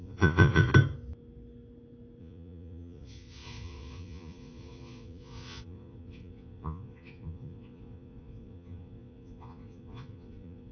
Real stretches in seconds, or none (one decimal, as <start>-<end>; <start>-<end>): 0.7-2.2